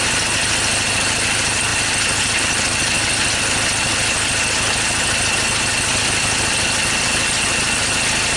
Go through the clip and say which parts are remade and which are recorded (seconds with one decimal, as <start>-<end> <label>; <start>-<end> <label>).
0.0-8.4 recorded